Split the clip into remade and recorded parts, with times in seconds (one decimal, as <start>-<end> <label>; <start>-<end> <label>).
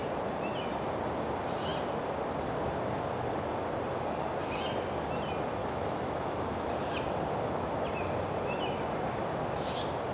0.0-5.6 recorded; 5.6-6.7 remade; 6.7-10.1 recorded